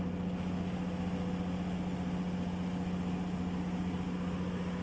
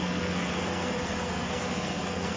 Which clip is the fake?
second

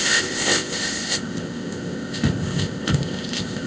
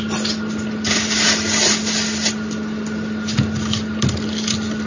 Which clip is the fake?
first